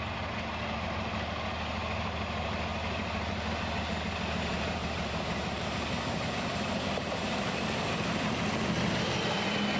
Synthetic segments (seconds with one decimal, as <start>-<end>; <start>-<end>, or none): 4.5-8.5